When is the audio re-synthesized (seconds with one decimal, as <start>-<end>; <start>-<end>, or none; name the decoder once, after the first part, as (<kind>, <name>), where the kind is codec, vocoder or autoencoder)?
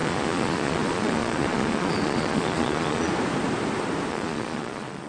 0.0-3.1 (vocoder, Vocos); 4.1-5.1